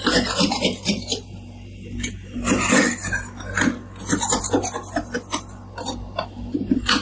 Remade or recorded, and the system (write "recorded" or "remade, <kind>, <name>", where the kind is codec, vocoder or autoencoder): recorded